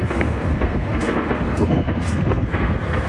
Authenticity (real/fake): fake